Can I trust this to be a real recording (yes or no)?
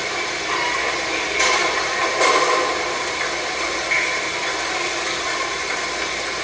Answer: no